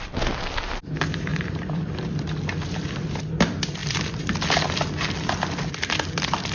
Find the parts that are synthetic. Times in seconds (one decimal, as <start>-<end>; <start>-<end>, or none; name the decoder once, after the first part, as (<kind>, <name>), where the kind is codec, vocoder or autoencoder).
0.0-6.5 (vocoder, BigVGAN v2)